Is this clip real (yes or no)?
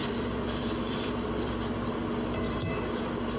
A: no